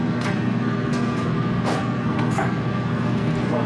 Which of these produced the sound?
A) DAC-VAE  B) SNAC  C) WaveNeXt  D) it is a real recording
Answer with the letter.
B